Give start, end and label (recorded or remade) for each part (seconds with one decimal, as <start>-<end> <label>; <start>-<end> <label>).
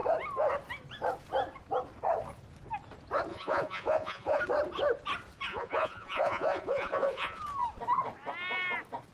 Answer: 0.0-3.3 recorded; 3.3-4.4 remade; 4.4-5.5 recorded; 5.5-7.4 remade; 7.4-9.1 recorded